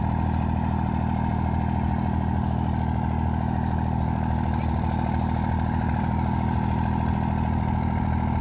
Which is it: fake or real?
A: real